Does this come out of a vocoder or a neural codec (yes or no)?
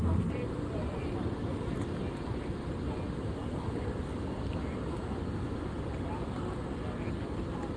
no